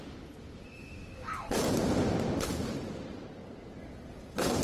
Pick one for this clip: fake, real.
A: real